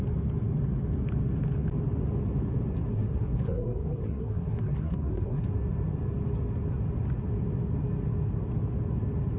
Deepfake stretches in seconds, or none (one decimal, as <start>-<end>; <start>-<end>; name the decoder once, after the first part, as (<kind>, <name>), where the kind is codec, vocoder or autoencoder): 2.9-5.4 (codec, SNAC)